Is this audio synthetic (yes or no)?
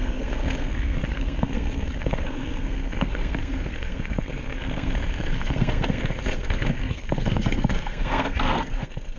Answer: yes